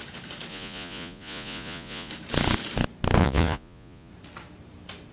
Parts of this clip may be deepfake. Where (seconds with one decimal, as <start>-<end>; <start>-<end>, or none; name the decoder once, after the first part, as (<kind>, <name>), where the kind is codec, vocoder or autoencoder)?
0.5-2.1 (vocoder, Vocos); 3.2-4.1

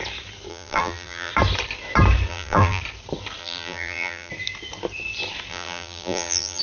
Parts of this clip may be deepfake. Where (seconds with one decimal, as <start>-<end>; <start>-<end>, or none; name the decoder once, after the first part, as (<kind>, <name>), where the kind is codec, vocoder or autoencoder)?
0.5-1.3 (vocoder, BigVGAN v2); 2.3-2.8; 3.4-4.3; 5.5-6.6

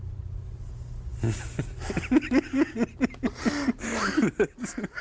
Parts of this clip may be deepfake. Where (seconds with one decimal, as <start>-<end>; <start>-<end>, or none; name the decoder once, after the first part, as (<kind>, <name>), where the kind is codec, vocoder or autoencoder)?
none

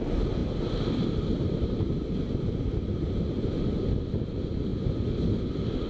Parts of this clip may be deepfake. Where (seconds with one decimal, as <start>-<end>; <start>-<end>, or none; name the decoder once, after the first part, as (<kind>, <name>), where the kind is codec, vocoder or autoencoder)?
0.4-3.9 (vocoder, BigVGAN v2)

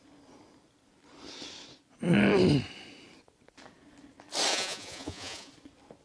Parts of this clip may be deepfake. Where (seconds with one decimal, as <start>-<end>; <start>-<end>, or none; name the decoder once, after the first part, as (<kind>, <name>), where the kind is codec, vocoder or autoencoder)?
4.5-5.5 (vocoder, Vocos)

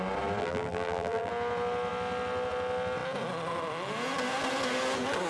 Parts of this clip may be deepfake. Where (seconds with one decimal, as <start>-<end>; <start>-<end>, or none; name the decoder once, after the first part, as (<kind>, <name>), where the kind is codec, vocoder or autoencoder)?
0.4-1.3 (vocoder, BigVGAN v2)